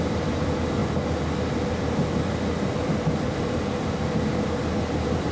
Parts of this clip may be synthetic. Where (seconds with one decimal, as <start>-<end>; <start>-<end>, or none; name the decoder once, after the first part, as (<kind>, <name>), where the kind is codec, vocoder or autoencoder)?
none